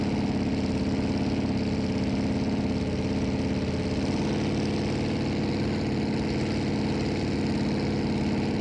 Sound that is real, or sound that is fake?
real